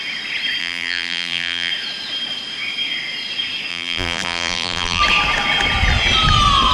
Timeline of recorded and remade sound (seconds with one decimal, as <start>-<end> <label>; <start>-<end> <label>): 0.0-0.6 recorded; 0.6-1.7 remade; 1.7-3.7 recorded; 3.7-5.0 remade; 5.0-6.7 recorded